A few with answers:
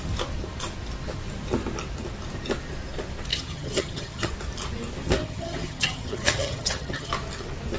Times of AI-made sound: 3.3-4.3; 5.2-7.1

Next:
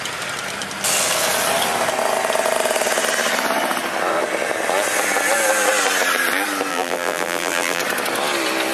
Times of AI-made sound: 6.7-7.8